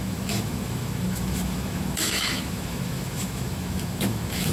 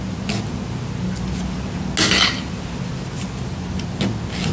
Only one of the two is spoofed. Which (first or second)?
first